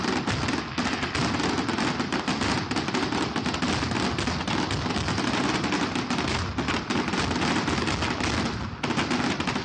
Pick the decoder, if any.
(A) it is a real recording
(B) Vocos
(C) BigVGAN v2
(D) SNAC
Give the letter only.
A